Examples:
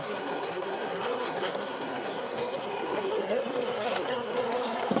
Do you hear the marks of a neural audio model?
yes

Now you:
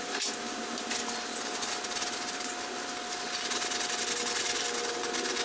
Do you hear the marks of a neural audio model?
no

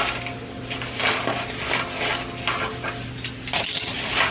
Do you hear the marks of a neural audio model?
no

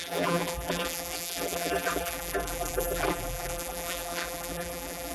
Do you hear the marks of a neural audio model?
yes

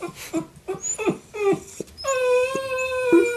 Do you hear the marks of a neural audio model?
no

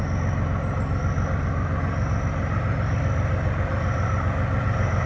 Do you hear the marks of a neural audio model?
no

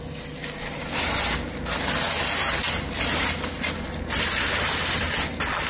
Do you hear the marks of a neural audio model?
no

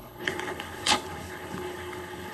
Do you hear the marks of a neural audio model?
yes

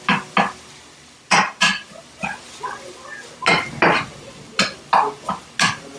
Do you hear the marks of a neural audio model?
no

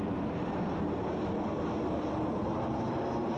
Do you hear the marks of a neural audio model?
no